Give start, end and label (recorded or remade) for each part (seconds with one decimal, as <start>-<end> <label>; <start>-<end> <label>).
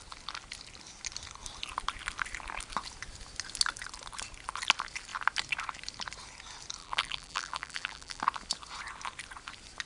0.0-6.8 recorded; 6.8-8.2 remade; 8.2-9.9 recorded